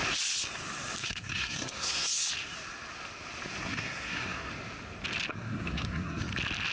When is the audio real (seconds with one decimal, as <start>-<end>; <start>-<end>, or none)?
0.0-1.0; 2.3-3.6; 4.5-5.3; 6.2-6.7